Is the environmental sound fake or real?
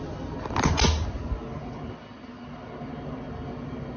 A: real